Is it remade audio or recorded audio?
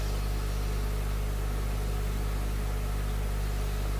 recorded